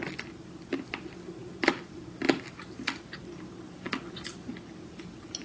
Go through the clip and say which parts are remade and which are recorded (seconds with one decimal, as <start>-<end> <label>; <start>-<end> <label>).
0.0-5.4 recorded